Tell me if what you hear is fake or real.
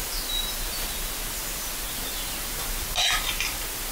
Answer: real